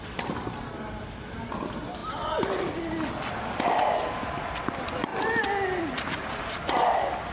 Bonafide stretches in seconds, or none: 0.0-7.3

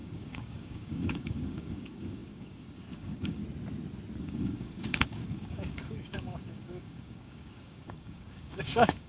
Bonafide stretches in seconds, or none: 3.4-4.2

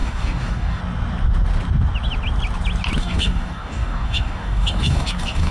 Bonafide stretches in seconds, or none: 0.8-3.0